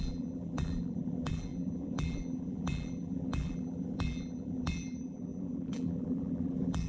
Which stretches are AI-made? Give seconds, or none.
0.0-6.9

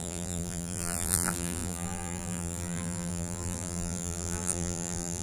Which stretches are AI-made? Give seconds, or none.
0.0-5.2